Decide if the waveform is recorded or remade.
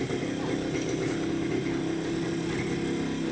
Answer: recorded